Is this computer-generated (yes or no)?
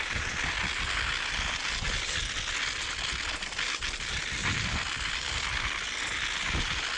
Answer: no